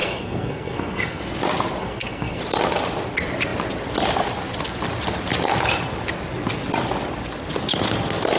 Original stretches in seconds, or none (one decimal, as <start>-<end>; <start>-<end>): 1.2-1.8; 2.4-8.4